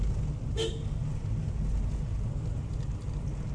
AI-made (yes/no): no